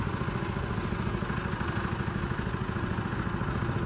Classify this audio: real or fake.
real